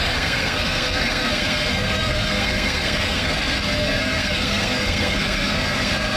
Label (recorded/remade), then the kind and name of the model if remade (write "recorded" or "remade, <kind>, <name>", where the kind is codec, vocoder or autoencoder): remade, codec, SNAC